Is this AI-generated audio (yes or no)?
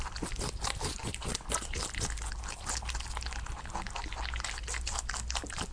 no